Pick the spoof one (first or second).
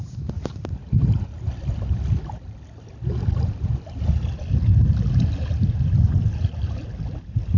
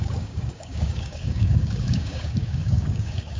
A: second